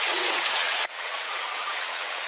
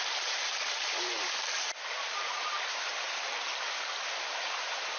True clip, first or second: second